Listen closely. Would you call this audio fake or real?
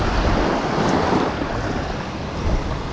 real